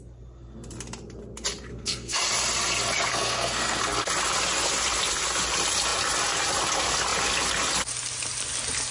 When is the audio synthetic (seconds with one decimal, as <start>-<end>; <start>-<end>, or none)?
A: 1.7-2.2; 3.1-3.8